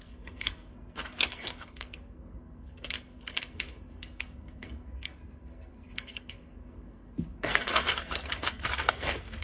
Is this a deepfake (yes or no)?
yes